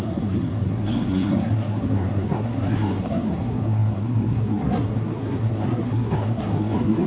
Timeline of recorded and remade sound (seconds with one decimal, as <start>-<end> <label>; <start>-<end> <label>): 0.0-7.1 remade